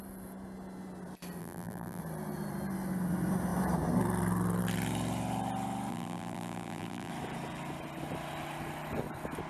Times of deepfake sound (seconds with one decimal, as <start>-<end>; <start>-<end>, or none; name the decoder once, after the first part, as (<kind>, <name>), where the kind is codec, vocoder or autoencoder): 1.4-2.0 (vocoder, BigVGAN v2); 5.9-7.1